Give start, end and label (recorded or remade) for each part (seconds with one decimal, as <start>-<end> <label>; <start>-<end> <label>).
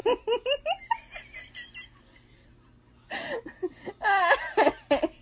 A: 0.0-5.2 recorded